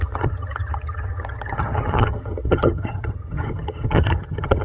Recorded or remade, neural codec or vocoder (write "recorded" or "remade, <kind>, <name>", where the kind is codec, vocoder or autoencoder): remade, vocoder, HiFi-GAN